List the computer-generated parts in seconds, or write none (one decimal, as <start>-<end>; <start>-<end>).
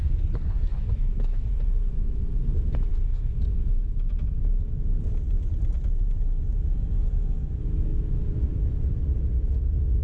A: 0.7-1.5; 7.9-8.5